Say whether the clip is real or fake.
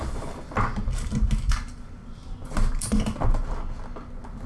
real